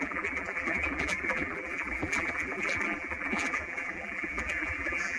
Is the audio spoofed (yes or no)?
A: yes